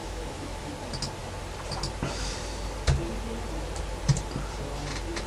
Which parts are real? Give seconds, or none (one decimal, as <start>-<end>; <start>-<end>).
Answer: 0.7-5.3